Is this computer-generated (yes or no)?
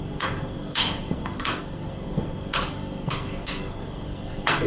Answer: yes